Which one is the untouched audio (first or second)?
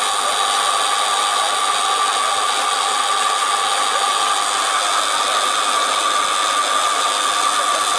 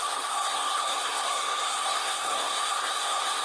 first